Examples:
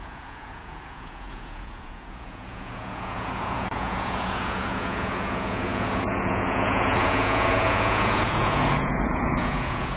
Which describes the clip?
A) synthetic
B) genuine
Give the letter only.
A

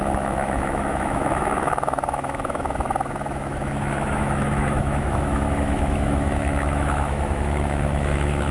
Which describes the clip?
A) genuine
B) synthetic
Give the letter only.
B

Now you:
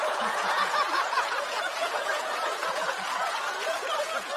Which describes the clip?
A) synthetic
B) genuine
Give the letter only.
A